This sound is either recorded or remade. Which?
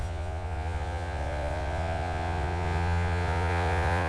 remade